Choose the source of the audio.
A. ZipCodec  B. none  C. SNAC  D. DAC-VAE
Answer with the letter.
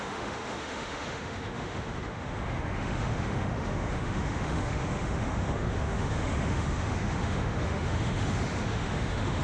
D